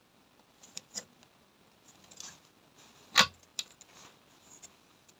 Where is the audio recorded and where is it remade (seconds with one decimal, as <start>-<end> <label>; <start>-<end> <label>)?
0.0-5.2 recorded

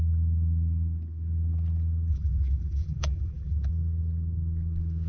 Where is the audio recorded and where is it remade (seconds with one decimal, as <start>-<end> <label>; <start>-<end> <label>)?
0.0-2.1 recorded; 2.1-3.7 remade; 3.7-5.1 recorded

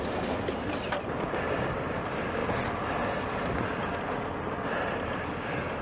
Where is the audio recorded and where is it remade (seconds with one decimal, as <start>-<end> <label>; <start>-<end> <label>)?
0.0-2.4 remade; 2.4-4.8 recorded; 4.8-5.8 remade

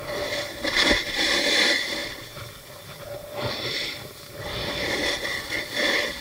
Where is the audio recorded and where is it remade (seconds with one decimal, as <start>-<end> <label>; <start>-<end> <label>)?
0.0-6.2 remade

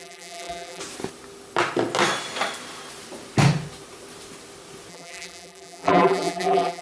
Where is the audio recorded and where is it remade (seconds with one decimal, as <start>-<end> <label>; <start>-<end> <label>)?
0.0-0.8 remade; 0.8-4.9 recorded; 4.9-6.8 remade

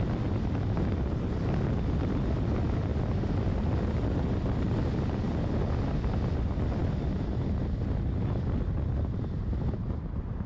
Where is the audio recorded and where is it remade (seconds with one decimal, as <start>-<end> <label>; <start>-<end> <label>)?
0.0-10.5 recorded

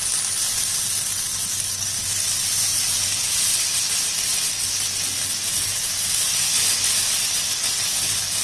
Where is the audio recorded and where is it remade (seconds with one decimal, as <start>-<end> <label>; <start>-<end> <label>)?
0.0-8.4 recorded

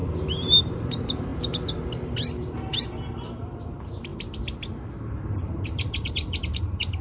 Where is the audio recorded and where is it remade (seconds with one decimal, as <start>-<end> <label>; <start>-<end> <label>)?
0.0-1.3 remade; 1.3-3.2 recorded; 3.2-7.0 remade